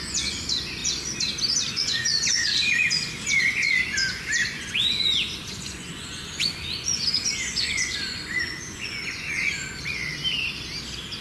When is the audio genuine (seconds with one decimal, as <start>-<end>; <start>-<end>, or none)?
0.8-1.7; 10.1-11.2